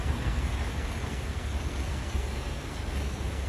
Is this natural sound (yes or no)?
no